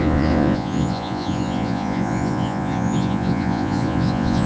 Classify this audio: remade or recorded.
remade